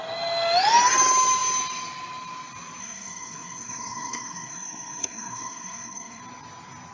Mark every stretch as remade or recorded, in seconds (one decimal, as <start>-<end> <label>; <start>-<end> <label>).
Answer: 0.0-2.8 recorded; 2.8-6.2 remade; 6.2-6.9 recorded